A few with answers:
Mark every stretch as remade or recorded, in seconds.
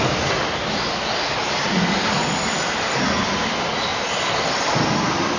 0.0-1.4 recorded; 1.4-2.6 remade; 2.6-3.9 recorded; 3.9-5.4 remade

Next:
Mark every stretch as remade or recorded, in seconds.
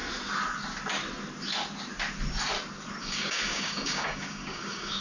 0.0-3.0 recorded; 3.0-5.0 remade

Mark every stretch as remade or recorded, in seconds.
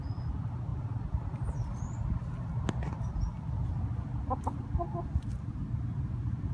0.0-6.5 recorded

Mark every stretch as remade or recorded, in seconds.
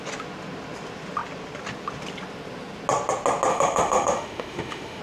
0.0-3.5 recorded; 3.5-5.0 remade